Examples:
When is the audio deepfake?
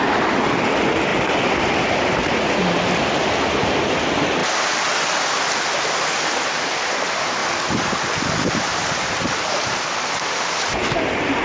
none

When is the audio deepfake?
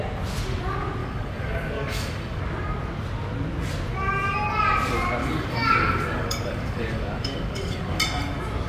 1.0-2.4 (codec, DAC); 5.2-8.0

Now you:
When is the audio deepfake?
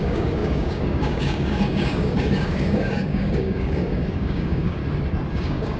0.0-4.8 (codec, DAC); 5.3-5.8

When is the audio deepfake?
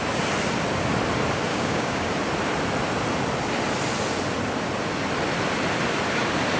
1.5-2.1 (codec, DAC)